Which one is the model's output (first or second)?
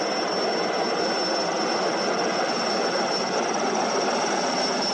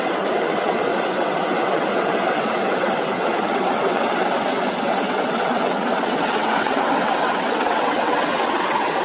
second